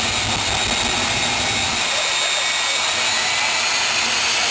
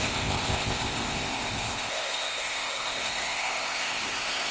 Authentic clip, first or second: first